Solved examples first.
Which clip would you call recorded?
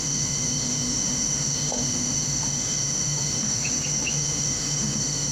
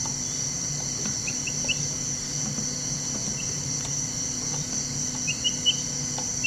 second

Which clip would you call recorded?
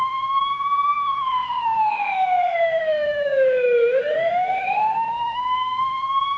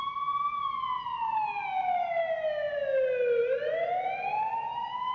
second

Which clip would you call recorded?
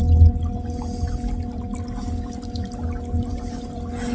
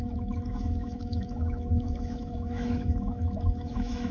first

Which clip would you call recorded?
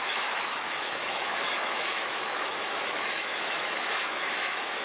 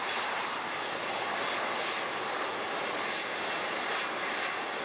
second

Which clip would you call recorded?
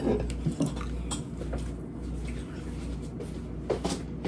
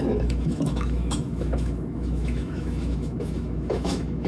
first